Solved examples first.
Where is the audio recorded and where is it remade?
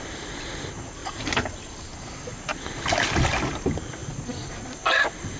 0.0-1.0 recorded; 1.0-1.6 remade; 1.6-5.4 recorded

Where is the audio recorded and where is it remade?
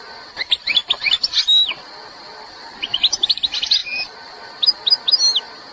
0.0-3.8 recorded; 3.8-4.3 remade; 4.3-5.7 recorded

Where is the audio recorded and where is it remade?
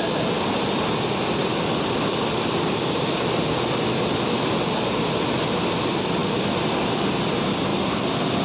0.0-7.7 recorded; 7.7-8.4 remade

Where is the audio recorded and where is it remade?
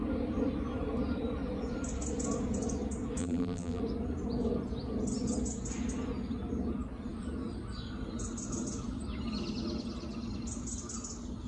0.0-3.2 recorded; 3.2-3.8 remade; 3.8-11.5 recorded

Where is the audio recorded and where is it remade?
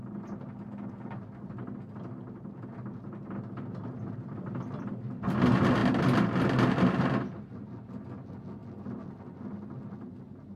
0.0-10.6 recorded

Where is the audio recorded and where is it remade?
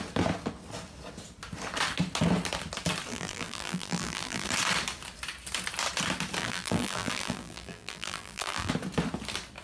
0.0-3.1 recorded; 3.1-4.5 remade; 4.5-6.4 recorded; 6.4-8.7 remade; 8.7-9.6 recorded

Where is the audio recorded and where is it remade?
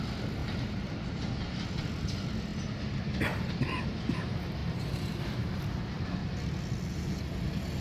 0.0-0.4 recorded; 0.4-1.0 remade; 1.0-4.6 recorded; 4.6-5.2 remade; 5.2-7.8 recorded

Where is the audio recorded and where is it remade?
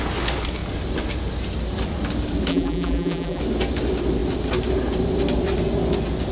0.0-2.5 recorded; 2.5-3.4 remade; 3.4-6.3 recorded